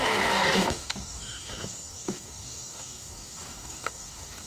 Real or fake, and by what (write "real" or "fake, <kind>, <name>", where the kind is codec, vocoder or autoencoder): fake, codec, DAC